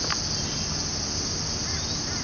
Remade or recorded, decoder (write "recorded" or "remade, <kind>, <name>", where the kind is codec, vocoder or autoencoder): recorded